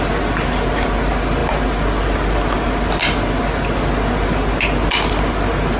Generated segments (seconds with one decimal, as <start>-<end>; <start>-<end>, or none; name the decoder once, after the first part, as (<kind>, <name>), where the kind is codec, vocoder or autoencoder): none